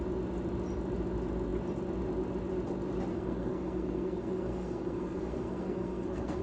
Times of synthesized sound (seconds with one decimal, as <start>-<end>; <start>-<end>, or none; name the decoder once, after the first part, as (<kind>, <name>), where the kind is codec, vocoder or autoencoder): 3.1-6.4 (codec, SNAC)